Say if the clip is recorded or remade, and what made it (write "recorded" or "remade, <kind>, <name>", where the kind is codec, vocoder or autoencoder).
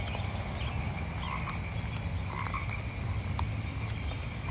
recorded